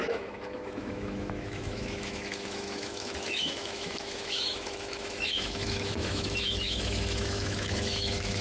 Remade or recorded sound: remade